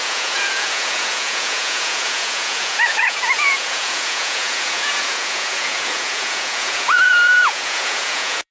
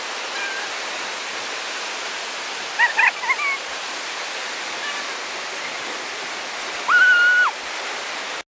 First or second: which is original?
second